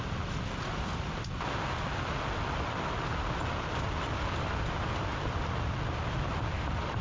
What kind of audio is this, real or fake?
real